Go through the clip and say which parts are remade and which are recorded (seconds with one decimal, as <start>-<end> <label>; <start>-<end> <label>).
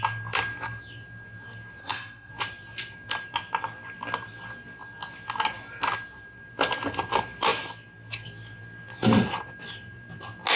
0.0-1.8 recorded; 1.8-2.3 remade; 2.3-10.6 recorded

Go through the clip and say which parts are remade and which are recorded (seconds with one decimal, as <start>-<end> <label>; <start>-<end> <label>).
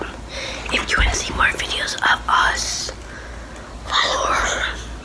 0.0-5.0 recorded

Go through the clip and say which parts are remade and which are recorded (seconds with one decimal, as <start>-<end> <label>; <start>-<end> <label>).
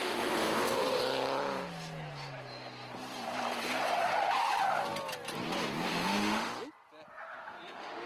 0.0-1.0 remade; 1.0-5.9 recorded; 5.9-6.5 remade; 6.5-7.1 recorded; 7.1-8.1 remade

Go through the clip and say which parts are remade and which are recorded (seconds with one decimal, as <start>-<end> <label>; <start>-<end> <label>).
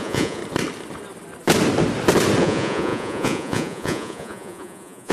0.0-0.4 remade; 0.4-2.4 recorded; 2.4-5.1 remade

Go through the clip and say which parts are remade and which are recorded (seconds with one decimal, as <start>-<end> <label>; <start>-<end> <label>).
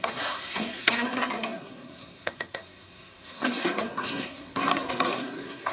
0.0-5.7 remade